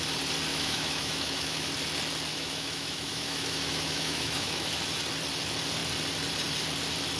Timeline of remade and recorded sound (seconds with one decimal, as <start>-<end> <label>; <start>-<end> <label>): 0.0-0.5 recorded; 0.5-1.7 remade; 1.7-2.3 recorded; 2.3-4.7 remade; 4.7-7.2 recorded